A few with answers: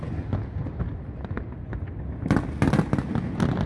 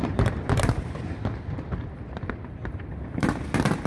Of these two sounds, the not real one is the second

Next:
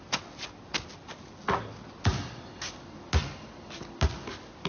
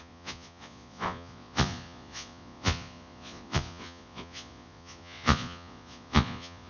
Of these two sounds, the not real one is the second